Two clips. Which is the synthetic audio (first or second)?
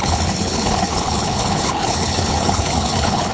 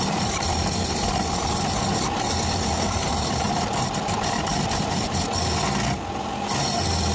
first